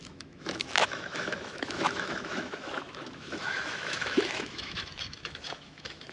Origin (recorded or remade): remade